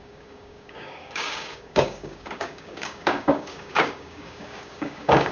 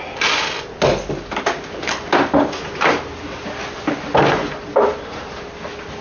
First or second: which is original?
second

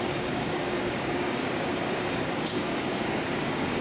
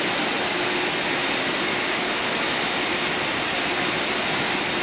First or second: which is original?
second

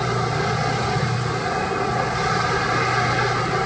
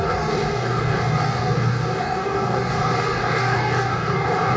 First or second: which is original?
first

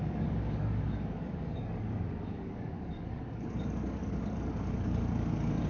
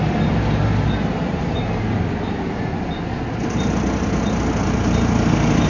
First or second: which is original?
second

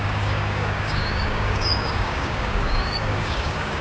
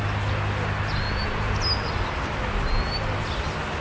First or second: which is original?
second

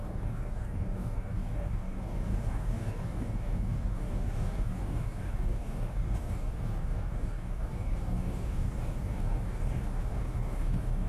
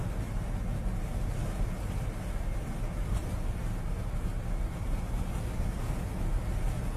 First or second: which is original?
second